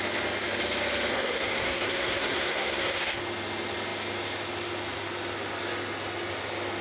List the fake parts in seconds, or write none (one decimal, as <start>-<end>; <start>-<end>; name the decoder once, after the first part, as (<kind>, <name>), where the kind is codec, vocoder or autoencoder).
1.1-3.2 (codec, SNAC)